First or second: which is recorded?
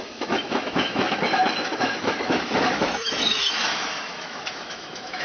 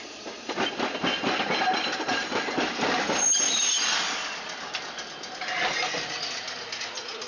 second